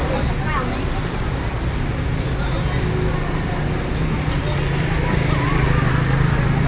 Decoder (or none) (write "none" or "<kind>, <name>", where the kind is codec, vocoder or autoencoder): none